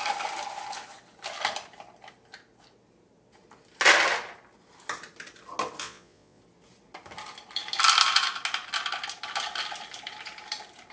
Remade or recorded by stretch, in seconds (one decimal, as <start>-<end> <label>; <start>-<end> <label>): 0.0-5.8 recorded; 5.8-6.4 remade; 6.4-10.9 recorded